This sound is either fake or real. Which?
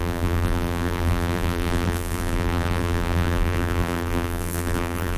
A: fake